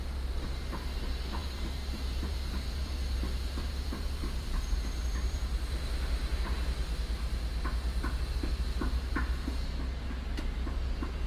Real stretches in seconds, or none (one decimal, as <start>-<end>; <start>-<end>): 0.0-1.4; 6.4-11.3